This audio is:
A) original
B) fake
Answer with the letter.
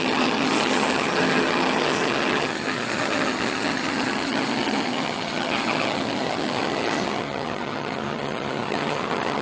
B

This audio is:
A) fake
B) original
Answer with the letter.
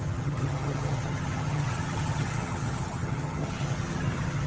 A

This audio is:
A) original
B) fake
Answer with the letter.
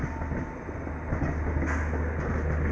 A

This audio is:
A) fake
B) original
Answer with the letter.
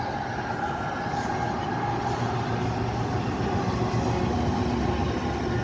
B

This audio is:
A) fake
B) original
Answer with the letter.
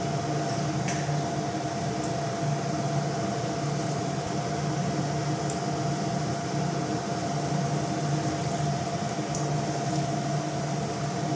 B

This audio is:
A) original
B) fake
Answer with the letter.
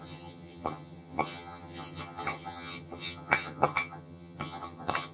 B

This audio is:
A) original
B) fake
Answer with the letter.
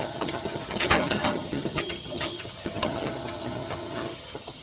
B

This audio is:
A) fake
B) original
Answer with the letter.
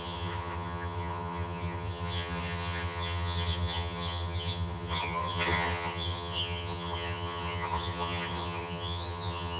A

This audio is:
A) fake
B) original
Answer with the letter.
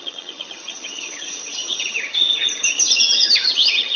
A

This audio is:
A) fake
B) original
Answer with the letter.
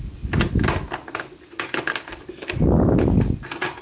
B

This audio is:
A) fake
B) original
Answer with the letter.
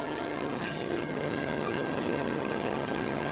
A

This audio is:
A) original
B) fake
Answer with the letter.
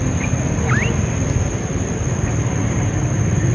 A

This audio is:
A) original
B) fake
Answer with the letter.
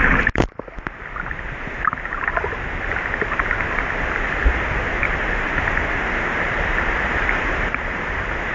A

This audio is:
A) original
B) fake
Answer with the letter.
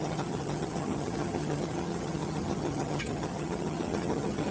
B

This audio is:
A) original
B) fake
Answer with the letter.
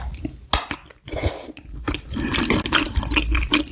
A